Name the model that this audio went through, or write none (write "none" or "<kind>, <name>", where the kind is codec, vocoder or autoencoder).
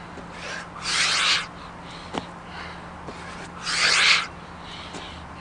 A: none